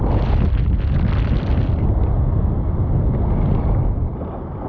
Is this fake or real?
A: real